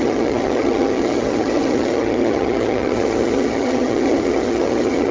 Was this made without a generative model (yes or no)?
no